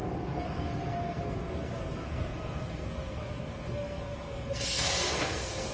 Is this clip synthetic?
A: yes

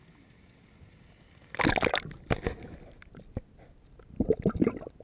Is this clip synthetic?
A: no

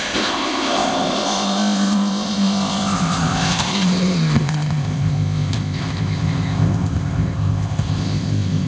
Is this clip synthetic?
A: yes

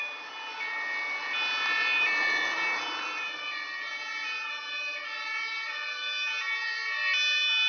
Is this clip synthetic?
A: no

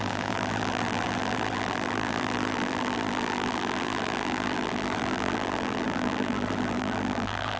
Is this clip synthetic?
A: yes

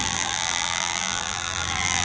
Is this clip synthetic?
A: yes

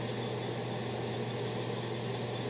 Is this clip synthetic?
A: no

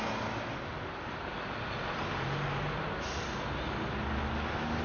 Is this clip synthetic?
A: no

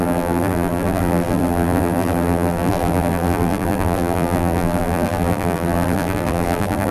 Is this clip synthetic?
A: yes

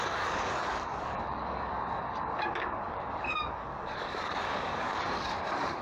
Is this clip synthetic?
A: yes